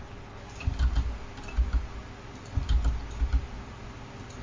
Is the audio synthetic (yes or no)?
no